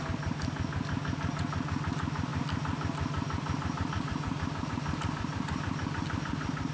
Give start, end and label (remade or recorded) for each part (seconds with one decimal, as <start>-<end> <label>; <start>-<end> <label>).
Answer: 0.0-6.7 recorded